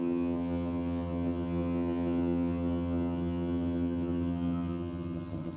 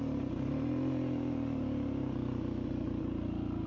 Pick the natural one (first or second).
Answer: second